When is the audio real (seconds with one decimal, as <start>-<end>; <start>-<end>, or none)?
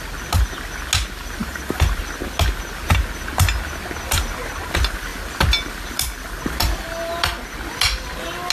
0.0-1.4; 2.0-8.5